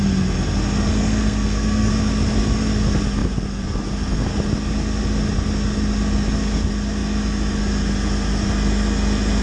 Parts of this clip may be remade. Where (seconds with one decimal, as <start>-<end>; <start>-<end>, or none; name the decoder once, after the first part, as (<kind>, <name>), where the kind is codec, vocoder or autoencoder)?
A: 0.9-1.9 (codec, SNAC)

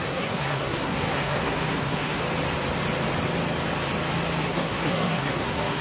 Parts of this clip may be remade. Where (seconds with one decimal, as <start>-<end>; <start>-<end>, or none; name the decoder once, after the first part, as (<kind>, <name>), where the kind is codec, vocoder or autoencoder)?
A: 0.0-2.2 (codec, SNAC); 4.4-5.8

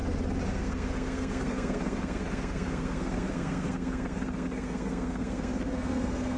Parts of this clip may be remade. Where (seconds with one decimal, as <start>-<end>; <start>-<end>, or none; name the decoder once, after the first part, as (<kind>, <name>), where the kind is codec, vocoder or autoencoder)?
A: 0.5-6.4 (codec, SNAC)

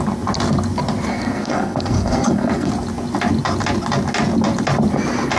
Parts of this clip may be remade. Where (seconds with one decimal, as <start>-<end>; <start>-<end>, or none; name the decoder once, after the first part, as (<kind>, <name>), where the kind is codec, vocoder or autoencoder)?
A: 1.1-2.7 (codec, SNAC)

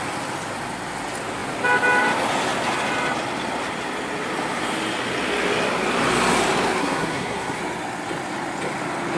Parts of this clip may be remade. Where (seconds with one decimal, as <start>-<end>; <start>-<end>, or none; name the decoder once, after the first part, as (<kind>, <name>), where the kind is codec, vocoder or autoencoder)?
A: 6.8-7.6 (codec, SNAC)